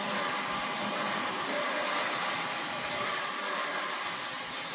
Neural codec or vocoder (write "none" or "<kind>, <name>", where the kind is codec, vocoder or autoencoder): none